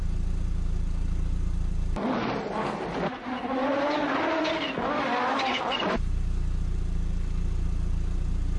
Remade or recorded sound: recorded